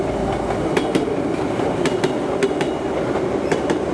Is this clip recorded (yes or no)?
yes